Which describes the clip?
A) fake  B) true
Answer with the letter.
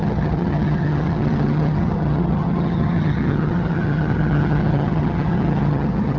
A